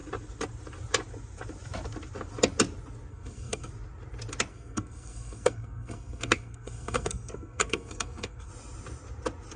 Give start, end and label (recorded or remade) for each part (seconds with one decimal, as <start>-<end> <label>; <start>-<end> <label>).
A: 0.0-3.1 recorded; 3.1-3.7 remade; 3.7-4.5 recorded; 4.5-8.5 remade; 8.5-9.6 recorded